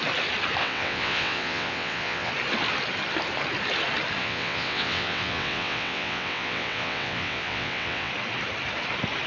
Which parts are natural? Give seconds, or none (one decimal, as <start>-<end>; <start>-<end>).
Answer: 0.0-0.6; 2.3-4.2; 8.1-9.3